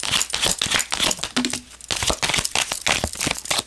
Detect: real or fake real